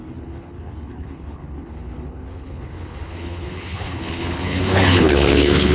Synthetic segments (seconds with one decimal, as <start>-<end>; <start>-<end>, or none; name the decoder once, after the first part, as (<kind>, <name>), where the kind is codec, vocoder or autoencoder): 0.0-5.7 (codec, HILCodec)